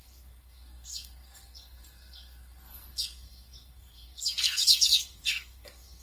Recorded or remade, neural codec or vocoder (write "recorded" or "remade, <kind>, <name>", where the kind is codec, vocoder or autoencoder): remade, codec, SNAC